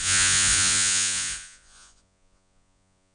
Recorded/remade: remade